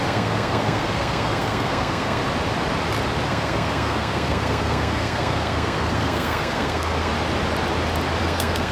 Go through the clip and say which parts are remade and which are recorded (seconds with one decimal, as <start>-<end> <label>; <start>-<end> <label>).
0.0-2.2 remade; 2.2-3.3 recorded; 3.3-7.1 remade; 7.1-8.2 recorded; 8.2-8.7 remade